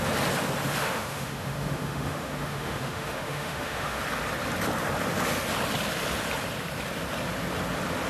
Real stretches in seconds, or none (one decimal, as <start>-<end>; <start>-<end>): 0.0-0.8; 4.0-8.1